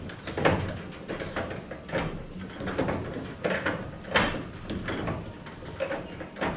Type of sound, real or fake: real